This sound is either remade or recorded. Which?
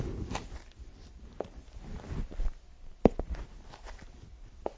recorded